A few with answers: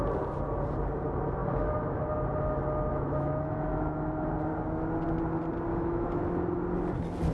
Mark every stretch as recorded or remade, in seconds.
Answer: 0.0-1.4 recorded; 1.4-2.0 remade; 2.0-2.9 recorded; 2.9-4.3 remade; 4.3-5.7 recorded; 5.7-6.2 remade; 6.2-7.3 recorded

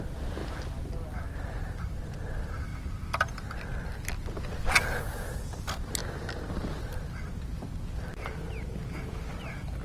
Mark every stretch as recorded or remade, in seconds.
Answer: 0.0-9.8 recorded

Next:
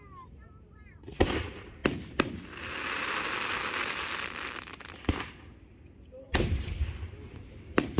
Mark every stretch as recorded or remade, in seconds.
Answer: 0.0-8.0 recorded

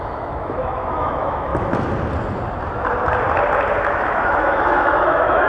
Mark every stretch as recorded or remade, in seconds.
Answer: 0.0-1.5 remade; 1.5-3.9 recorded; 3.9-5.5 remade

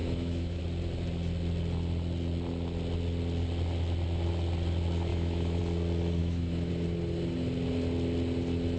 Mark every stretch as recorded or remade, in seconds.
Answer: 0.0-0.6 remade; 0.6-5.1 recorded; 5.1-5.6 remade; 5.6-6.2 recorded; 6.2-6.7 remade; 6.7-8.8 recorded

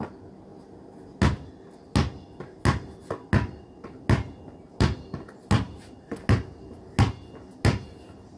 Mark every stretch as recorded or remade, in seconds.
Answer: 0.0-8.4 recorded